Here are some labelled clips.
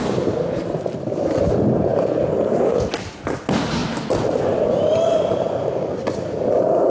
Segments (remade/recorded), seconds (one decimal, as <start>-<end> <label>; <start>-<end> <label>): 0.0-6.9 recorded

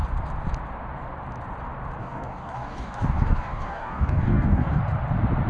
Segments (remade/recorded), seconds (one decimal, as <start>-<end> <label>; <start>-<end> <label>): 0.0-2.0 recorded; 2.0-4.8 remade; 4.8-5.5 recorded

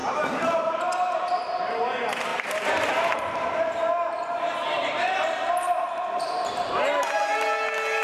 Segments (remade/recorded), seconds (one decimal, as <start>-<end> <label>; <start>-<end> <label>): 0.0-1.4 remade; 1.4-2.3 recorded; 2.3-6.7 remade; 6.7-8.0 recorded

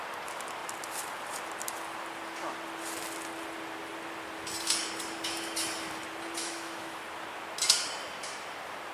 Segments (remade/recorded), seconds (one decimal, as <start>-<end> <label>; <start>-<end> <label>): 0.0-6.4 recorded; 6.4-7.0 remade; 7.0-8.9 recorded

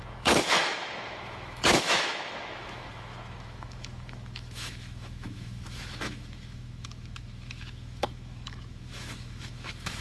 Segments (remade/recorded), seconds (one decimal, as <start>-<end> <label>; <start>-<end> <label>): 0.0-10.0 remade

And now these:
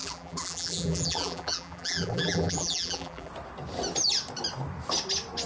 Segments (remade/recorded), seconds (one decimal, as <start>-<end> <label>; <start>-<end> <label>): 0.0-3.3 remade; 3.3-5.5 recorded